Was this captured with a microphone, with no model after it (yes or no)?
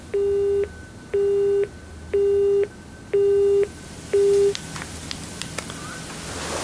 yes